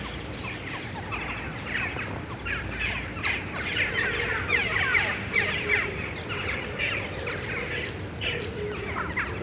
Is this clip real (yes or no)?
yes